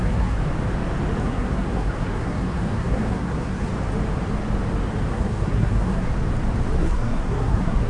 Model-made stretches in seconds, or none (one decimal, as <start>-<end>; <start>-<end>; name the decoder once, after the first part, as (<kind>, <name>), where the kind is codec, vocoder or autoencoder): 0.0-0.4 (codec, SNAC); 1.2-3.7; 5.1-6.1; 6.8-7.9